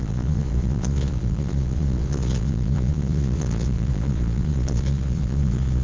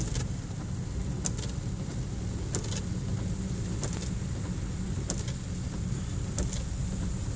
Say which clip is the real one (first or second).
second